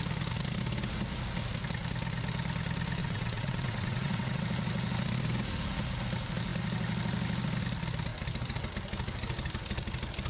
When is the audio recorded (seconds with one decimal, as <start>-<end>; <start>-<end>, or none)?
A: 0.0-3.0; 4.4-10.3

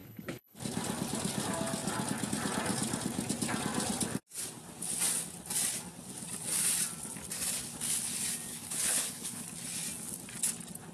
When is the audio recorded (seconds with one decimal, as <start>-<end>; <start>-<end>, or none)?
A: 0.6-8.5; 9.4-10.9

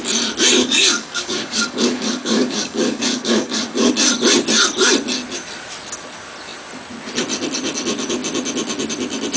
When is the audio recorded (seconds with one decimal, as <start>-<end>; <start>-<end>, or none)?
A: 0.0-0.6; 3.9-9.4